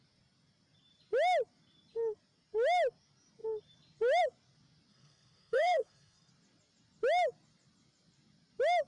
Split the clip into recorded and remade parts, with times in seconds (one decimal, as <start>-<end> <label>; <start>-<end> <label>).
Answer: 0.0-4.9 recorded; 4.9-6.3 remade; 6.3-8.9 recorded